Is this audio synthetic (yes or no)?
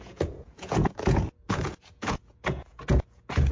yes